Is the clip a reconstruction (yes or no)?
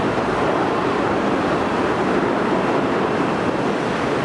no